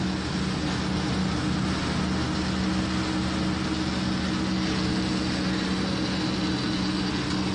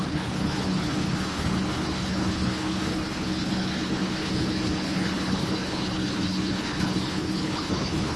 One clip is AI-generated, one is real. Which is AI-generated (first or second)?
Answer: second